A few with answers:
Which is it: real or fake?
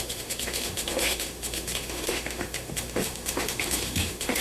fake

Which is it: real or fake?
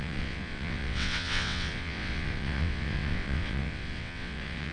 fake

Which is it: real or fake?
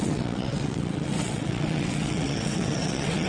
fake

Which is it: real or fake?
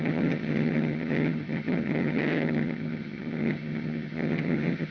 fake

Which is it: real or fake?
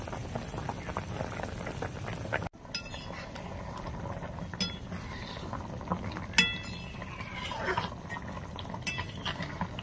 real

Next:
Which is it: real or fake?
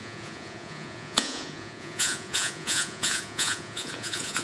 fake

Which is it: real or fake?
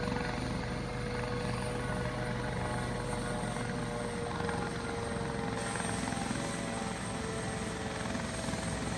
real